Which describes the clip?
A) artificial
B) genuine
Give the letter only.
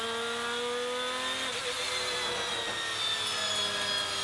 B